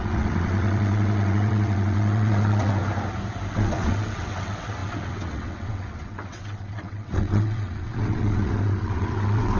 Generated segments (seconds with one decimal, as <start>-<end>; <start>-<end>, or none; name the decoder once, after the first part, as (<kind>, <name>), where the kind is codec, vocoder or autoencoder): 0.0-2.8 (vocoder, WaveNeXt); 3.5-9.6